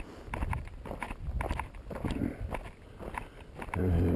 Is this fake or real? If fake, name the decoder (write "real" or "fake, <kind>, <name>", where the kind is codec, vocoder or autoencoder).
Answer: fake, vocoder, BigVGAN v2